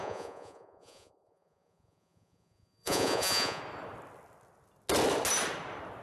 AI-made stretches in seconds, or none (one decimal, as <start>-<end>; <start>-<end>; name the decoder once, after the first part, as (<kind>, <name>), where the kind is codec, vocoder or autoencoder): 0.0-3.6 (vocoder, Vocos)

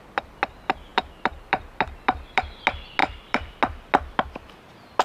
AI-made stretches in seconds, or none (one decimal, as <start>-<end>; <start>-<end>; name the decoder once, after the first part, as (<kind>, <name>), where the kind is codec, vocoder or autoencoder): 0.9-2.4 (vocoder, BigVGAN v2); 3.0-3.5

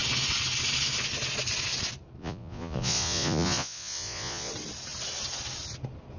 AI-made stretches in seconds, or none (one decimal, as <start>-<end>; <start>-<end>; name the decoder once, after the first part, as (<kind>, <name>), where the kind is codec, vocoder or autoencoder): 2.2-4.5 (vocoder, Vocos)

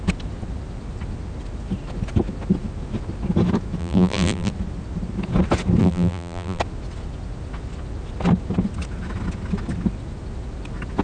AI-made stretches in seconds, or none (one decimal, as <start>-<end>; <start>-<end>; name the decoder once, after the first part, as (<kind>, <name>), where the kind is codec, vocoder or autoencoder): 3.8-4.5 (vocoder, BigVGAN v2); 5.8-6.6

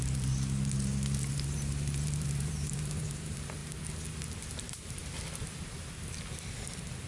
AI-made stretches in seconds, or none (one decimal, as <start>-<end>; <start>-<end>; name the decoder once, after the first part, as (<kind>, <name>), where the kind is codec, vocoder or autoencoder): 0.0-3.6 (vocoder, BigVGAN v2); 4.6-5.0

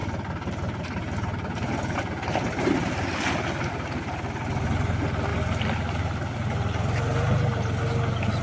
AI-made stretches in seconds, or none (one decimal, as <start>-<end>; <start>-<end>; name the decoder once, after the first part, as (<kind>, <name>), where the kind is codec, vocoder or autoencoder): none

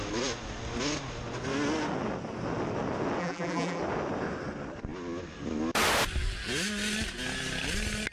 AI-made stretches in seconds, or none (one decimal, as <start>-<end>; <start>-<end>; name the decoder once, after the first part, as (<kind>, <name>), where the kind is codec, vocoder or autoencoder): 3.2-3.8 (vocoder, BigVGAN v2)

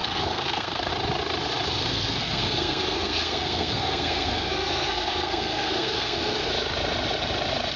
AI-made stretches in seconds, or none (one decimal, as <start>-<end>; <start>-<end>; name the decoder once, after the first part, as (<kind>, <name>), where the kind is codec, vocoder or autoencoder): 0.0-0.9 (codec, SNAC); 1.8-6.5